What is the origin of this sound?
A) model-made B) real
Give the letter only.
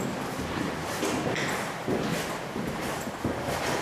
B